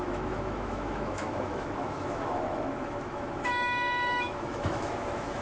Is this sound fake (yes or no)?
yes